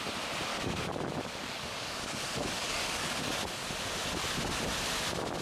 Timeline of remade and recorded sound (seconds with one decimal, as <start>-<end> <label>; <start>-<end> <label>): 0.0-0.5 recorded; 0.5-3.7 remade; 3.7-5.4 recorded